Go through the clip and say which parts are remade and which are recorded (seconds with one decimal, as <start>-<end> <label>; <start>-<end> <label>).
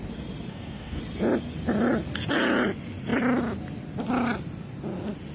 0.0-0.5 recorded; 0.5-1.0 remade; 1.0-5.3 recorded